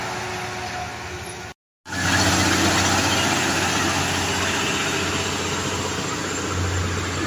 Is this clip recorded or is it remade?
recorded